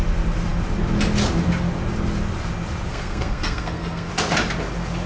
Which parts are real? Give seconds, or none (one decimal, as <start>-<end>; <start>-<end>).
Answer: 0.0-2.9; 4.1-5.1